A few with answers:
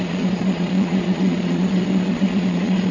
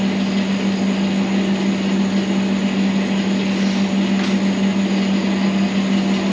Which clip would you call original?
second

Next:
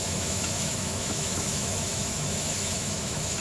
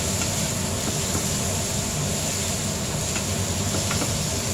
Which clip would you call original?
second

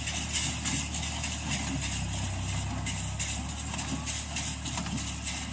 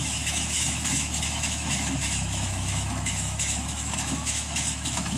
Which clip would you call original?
first